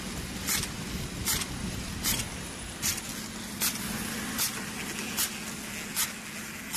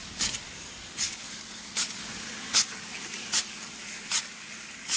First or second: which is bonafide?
first